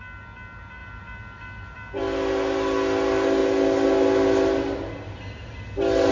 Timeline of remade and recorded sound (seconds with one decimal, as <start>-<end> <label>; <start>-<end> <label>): 0.0-6.1 recorded